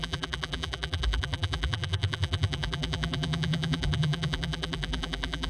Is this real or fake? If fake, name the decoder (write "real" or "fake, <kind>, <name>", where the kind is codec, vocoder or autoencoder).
fake, vocoder, BigVGAN v2